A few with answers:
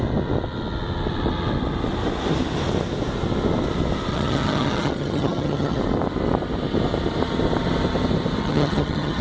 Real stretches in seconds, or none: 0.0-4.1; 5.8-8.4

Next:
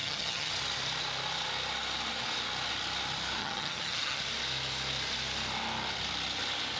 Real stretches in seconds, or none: 0.5-3.4; 4.2-6.8

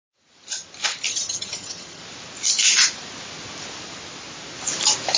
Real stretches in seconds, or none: 0.0-1.1; 2.0-5.2

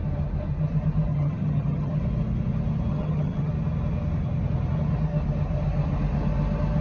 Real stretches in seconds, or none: 0.0-1.1; 2.0-2.9; 3.5-6.8

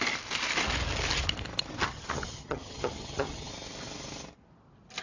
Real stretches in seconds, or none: 0.0-1.8; 3.5-5.0

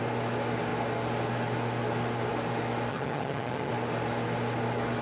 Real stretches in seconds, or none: 0.0-2.9; 3.7-5.0

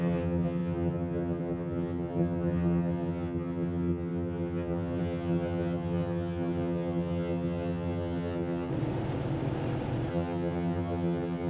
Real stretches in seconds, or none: 8.7-10.1